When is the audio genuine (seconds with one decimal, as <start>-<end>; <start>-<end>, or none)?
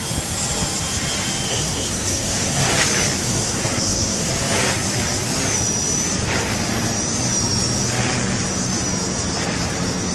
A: 0.0-1.5; 2.7-3.2; 4.3-10.1